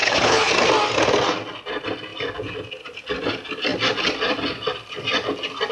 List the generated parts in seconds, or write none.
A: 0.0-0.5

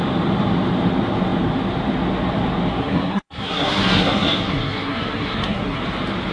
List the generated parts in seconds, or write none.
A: 2.8-5.8

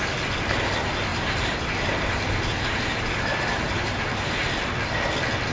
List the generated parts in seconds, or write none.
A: 1.1-4.4